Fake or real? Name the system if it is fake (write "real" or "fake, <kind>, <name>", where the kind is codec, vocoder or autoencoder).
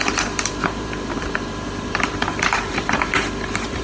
fake, vocoder, BigVGAN v2